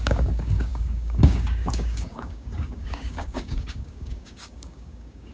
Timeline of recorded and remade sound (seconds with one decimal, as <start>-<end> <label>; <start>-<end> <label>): 0.0-5.3 remade